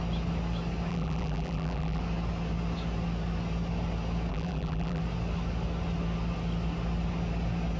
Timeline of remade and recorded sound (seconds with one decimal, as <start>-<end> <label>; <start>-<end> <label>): 0.0-0.9 recorded; 0.9-2.0 remade; 2.0-4.3 recorded; 4.3-5.0 remade; 5.0-7.8 recorded